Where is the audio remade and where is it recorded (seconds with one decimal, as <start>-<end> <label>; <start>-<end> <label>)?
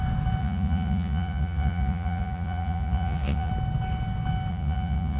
0.0-0.4 recorded; 0.4-3.5 remade; 3.5-4.5 recorded; 4.5-5.2 remade